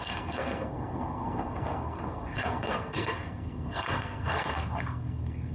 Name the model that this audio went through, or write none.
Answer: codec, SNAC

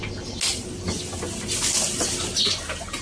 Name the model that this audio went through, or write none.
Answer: none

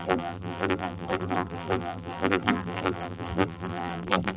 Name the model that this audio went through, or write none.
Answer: vocoder, BigVGAN v2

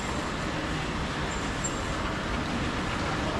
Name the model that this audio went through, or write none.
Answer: none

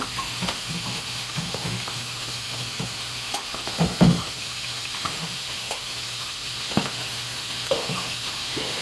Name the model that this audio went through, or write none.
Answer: autoencoder, DAC-VAE